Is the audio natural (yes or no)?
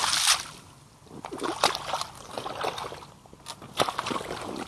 yes